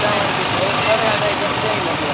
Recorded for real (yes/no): no